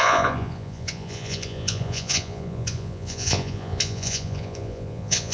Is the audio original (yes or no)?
no